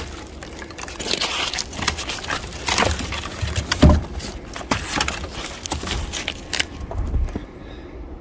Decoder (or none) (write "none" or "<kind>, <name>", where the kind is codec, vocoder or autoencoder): none